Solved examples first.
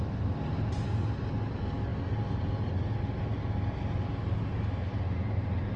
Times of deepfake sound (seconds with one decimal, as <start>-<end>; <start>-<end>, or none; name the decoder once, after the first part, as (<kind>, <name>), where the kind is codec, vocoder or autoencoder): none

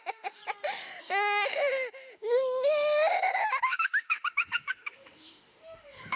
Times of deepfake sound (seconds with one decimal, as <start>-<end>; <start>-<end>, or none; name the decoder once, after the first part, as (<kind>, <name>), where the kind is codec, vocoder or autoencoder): 0.0-0.4 (autoencoder, DAC-VAE); 1.0-6.2

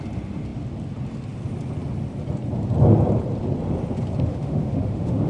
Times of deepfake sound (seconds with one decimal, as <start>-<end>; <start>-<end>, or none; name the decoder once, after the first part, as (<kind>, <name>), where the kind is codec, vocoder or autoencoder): 4.3-5.3 (autoencoder, DAC-VAE)

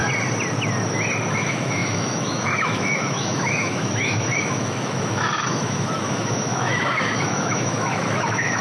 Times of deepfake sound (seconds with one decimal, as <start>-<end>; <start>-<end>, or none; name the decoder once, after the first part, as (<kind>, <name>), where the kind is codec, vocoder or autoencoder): 1.3-8.6 (autoencoder, DAC-VAE)

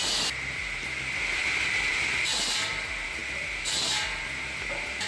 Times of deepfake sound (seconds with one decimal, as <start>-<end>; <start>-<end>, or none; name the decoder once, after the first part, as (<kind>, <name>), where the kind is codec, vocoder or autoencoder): none

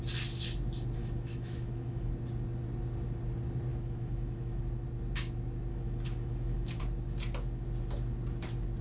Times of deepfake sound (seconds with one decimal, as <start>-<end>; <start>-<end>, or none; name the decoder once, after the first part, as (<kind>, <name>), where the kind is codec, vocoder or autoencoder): 1.0-2.1 (autoencoder, DAC-VAE); 3.7-4.6; 5.7-6.8